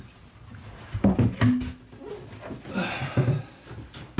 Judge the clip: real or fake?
real